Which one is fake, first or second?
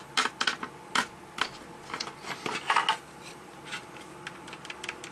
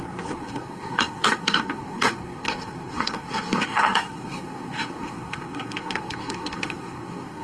second